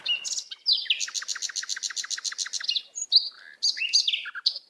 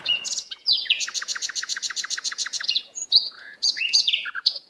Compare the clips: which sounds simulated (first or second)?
second